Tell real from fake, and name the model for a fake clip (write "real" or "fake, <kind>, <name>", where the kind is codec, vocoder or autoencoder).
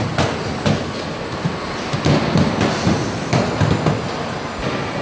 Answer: real